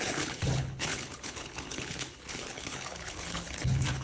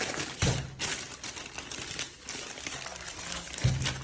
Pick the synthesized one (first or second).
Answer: first